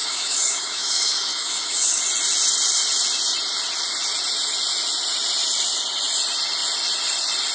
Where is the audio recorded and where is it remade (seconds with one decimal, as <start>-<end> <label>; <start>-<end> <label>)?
0.0-2.0 remade; 2.0-7.5 recorded